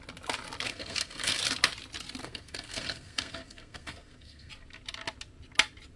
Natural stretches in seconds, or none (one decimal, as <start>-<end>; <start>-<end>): 0.0-0.7; 1.4-2.2; 4.5-6.0